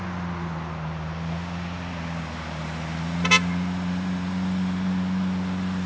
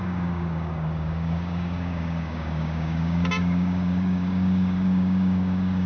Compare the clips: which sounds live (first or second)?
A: first